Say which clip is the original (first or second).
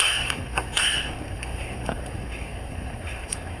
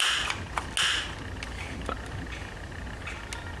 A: second